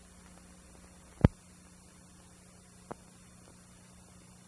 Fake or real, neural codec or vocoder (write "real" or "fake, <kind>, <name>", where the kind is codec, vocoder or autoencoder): real